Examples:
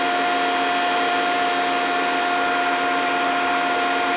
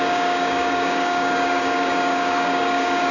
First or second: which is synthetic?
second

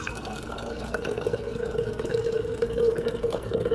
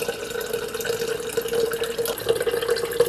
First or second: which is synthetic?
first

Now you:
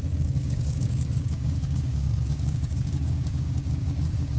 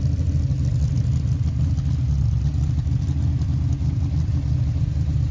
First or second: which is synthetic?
first